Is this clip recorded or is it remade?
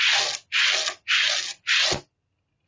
recorded